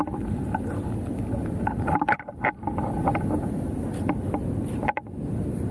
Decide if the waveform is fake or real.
real